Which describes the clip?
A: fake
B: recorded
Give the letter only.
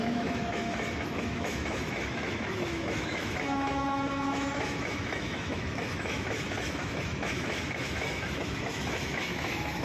A